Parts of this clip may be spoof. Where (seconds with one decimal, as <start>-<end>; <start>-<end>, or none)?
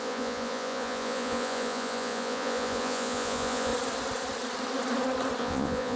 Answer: 0.0-3.7; 5.4-6.0